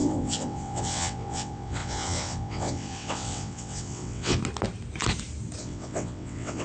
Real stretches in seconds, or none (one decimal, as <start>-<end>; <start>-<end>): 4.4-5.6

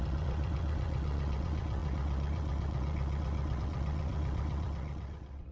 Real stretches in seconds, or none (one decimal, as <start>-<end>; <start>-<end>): none

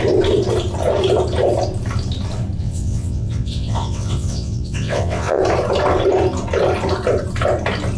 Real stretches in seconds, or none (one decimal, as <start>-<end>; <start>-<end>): 0.0-2.6; 5.4-8.0

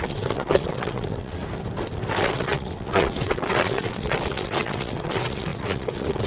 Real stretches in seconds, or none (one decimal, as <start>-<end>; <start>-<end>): 1.4-2.1